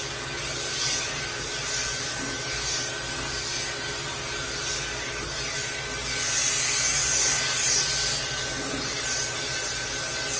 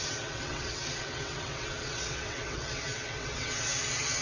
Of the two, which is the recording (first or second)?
first